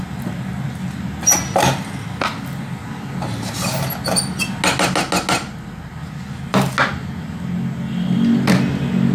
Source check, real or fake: real